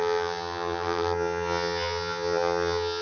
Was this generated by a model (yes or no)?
yes